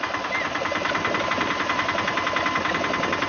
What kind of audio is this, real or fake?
real